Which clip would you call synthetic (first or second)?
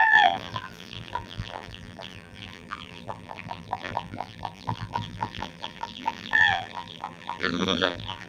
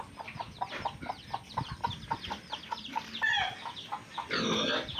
first